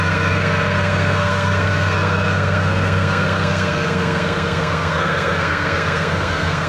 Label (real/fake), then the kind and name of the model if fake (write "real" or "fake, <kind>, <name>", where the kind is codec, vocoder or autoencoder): fake, codec, SNAC